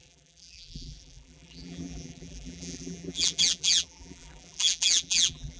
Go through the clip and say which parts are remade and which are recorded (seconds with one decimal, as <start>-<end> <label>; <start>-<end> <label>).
0.0-5.6 remade